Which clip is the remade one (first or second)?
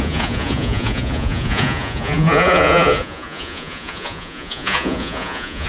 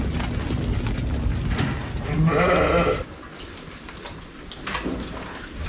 first